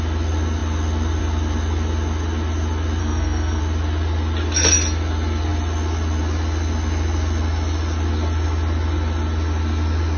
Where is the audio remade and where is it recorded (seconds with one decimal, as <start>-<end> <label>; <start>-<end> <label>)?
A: 0.0-3.0 recorded; 3.0-3.6 remade; 3.6-10.2 recorded